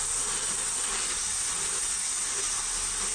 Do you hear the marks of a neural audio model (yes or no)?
no